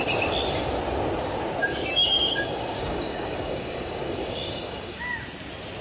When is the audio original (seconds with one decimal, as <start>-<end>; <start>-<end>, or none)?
0.0-1.6; 5.0-5.8